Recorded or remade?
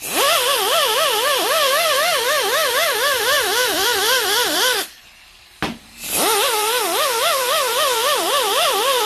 remade